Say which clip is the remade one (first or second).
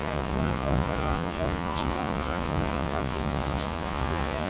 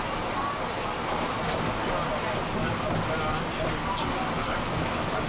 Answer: first